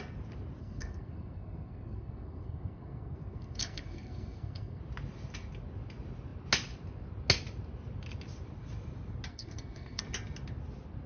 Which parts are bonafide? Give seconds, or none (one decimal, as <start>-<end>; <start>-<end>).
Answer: 0.0-0.6; 4.8-9.3; 10.0-11.1